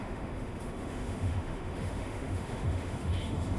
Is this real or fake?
fake